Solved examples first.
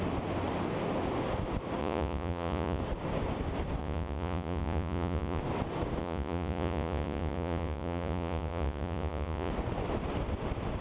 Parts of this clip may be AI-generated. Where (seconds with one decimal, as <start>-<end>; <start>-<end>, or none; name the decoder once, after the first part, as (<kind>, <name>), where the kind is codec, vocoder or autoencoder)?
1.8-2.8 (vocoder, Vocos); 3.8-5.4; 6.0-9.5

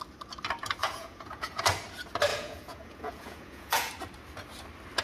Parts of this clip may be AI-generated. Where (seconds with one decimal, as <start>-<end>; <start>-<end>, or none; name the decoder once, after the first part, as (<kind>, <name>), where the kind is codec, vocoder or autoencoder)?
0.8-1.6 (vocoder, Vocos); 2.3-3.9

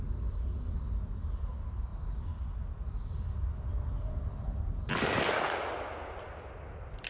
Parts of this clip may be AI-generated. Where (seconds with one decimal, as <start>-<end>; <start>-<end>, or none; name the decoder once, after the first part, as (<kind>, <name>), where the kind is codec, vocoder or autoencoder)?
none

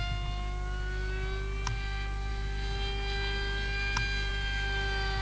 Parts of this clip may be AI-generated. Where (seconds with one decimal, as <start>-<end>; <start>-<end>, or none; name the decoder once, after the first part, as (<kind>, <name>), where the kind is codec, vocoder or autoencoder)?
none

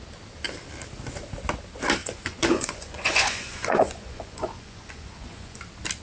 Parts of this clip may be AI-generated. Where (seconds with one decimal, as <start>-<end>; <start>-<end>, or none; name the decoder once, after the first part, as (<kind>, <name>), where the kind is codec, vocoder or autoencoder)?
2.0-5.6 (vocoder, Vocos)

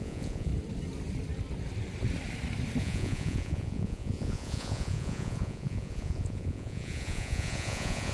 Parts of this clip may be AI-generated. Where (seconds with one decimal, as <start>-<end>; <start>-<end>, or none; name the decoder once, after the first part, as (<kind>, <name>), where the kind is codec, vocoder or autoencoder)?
0.0-0.5 (vocoder, Vocos); 2.8-8.1

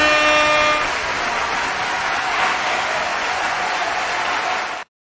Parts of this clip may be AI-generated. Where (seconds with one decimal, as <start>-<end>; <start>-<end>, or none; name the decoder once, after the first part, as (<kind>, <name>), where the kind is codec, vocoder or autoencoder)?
3.1-4.2 (vocoder, Vocos)